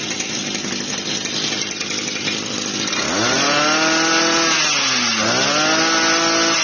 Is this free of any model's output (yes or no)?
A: yes